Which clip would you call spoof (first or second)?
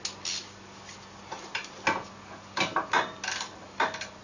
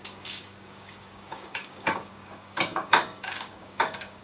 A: second